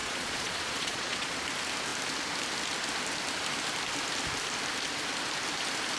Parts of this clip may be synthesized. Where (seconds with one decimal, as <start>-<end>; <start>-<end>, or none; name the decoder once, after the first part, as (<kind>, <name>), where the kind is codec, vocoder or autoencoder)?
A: 0.0-1.3 (vocoder, Vocos)